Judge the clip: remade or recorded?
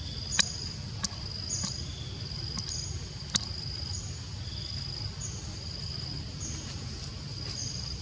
recorded